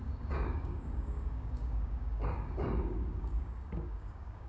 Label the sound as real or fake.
fake